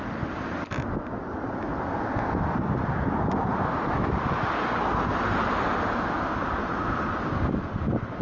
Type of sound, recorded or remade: recorded